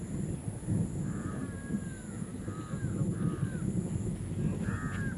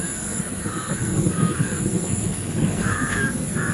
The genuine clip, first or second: first